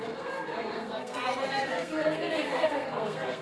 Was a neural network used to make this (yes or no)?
yes